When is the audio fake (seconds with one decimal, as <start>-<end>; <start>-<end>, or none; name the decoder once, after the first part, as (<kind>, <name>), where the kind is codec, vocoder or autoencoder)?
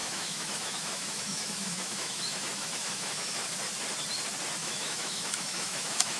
0.0-3.4 (autoencoder, DAC-VAE); 4.6-6.2